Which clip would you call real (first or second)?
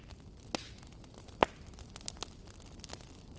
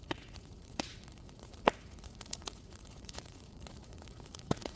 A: first